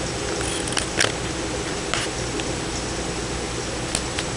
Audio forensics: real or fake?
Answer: real